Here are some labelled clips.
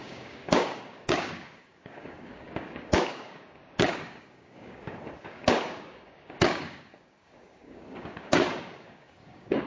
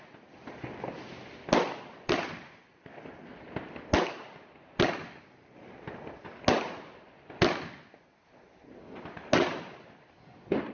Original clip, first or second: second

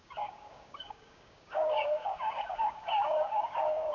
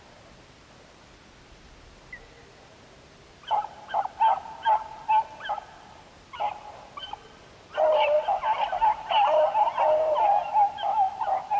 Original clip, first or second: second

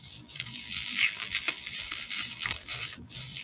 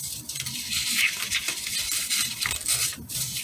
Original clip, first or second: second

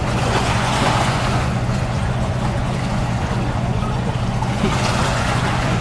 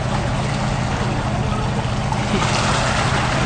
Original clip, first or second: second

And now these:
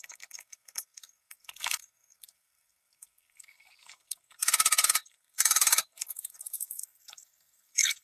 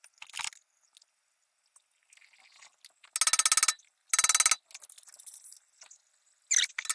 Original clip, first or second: second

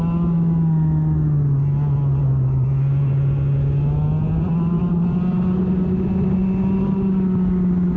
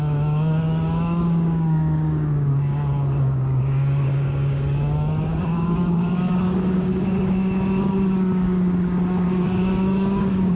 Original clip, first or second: first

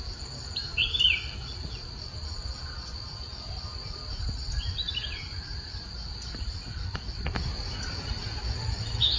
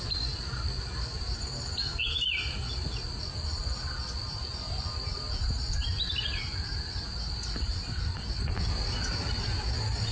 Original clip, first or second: second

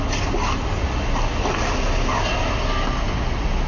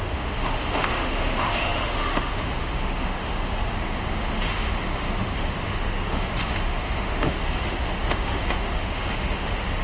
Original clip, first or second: first